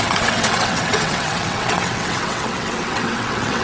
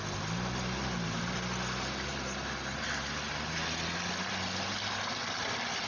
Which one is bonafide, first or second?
second